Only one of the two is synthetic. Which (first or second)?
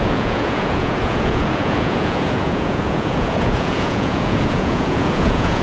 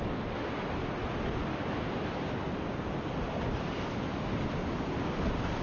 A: first